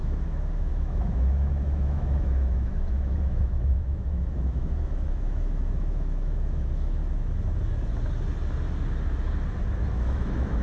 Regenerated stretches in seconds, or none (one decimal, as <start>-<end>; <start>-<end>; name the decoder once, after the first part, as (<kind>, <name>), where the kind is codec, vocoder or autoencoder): 0.0-7.0 (autoencoder, DAC-VAE); 9.9-10.6

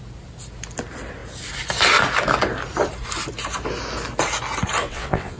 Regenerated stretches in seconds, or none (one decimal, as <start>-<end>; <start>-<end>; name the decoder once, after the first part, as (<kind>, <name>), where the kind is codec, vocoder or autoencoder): 4.8-5.4 (vocoder, WaveNeXt)

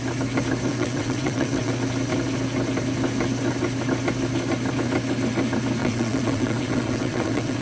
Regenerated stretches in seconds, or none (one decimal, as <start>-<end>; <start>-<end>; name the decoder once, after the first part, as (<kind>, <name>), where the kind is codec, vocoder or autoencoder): 0.7-1.7 (vocoder, WaveNeXt); 5.8-7.6

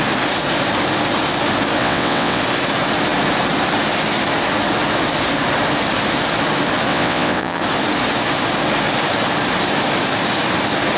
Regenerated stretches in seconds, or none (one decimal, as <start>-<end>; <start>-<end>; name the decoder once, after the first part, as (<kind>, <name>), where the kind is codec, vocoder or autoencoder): 1.8-2.4 (vocoder, WaveNeXt); 6.9-7.6

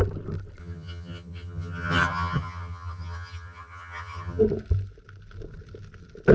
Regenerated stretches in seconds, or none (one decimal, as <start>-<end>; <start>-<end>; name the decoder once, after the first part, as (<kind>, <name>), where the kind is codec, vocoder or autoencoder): 0.6-4.4 (vocoder, HiFi-GAN)

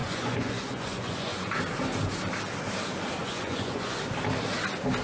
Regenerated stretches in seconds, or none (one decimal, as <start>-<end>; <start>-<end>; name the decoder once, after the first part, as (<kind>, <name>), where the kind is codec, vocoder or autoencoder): 0.0-1.6 (vocoder, Vocos); 3.2-4.0